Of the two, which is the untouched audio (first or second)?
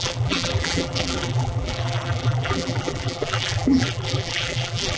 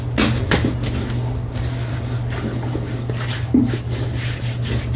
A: second